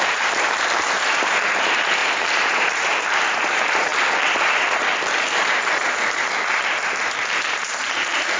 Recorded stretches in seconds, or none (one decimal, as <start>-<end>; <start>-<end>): none